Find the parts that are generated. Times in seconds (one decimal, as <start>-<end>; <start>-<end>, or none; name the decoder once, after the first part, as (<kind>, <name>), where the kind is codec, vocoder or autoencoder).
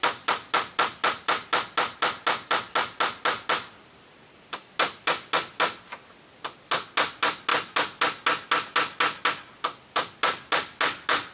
none